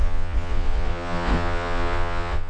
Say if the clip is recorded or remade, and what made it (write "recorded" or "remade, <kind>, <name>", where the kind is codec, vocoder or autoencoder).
remade, vocoder, Vocos